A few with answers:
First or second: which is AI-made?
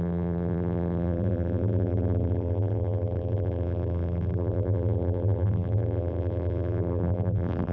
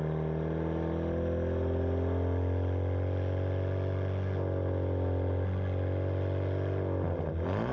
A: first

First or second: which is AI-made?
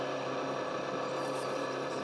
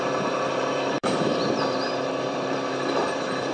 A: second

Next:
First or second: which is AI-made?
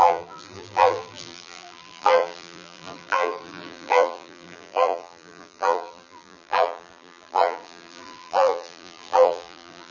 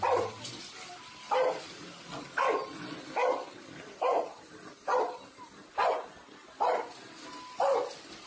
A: first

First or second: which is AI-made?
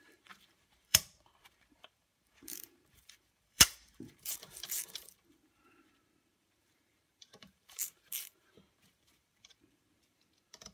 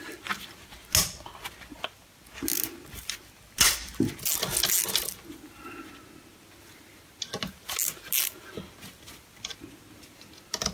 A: first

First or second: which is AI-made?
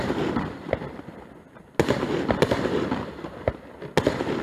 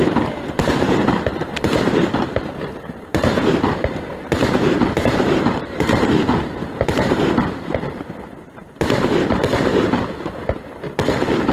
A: second